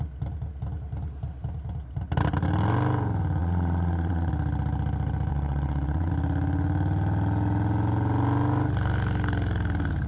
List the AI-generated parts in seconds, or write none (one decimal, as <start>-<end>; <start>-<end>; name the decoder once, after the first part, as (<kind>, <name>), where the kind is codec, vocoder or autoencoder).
3.4-4.3 (vocoder, Vocos); 5.3-6.1